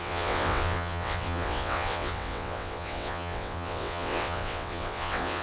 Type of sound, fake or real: fake